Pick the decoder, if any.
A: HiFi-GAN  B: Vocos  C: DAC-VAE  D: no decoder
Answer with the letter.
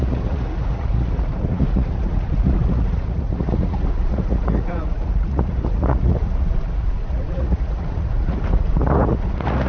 B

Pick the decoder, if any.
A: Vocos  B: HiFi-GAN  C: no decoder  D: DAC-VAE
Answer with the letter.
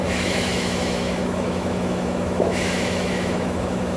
D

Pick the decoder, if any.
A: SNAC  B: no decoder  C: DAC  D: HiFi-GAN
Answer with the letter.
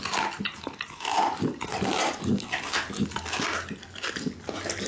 B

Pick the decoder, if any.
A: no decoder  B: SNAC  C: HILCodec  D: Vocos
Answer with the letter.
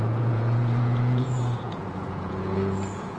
D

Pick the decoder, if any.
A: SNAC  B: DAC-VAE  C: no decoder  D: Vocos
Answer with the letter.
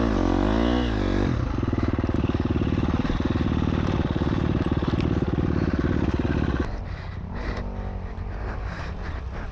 C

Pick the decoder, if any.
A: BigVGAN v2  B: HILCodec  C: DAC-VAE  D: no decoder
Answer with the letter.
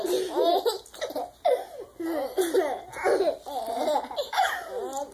D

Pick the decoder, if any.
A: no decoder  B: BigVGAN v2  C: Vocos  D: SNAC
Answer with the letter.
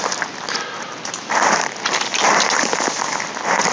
A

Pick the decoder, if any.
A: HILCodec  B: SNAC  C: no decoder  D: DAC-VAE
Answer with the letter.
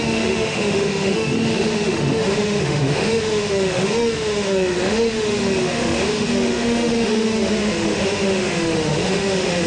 D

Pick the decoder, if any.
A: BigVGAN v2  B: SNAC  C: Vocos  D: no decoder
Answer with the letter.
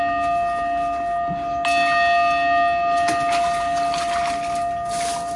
D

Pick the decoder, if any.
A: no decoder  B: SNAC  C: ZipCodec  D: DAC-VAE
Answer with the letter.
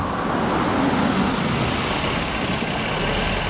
A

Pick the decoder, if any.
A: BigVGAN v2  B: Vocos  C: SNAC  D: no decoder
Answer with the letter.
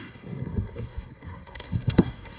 C